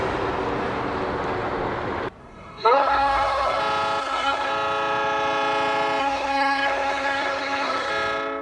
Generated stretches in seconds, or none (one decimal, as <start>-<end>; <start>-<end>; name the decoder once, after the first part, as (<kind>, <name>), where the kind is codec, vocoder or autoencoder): 2.2-3.6 (codec, SNAC); 4.0-4.5; 6.0-7.9